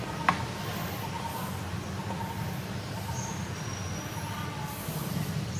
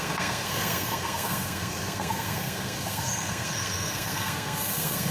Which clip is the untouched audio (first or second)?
first